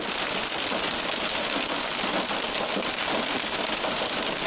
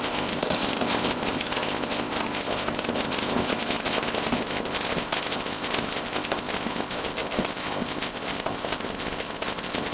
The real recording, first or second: first